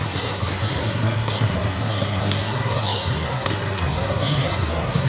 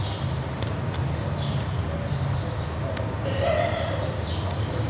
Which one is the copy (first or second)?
first